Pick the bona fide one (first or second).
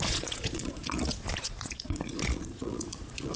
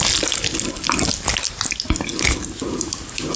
second